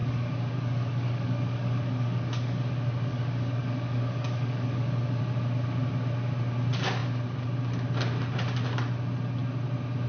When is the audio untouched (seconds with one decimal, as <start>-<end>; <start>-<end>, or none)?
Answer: 2.7-3.1; 5.2-10.1